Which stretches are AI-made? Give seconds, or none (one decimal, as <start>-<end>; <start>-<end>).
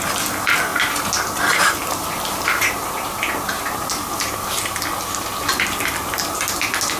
none